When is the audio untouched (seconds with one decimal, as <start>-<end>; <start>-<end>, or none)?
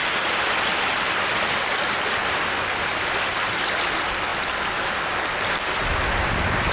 0.0-6.7